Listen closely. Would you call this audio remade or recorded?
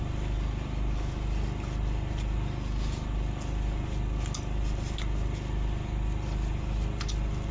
recorded